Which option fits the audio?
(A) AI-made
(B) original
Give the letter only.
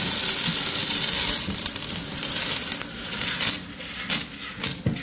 B